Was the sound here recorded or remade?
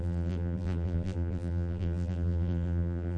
remade